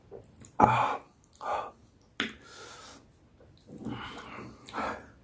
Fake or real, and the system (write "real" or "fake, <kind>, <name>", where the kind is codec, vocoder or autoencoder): real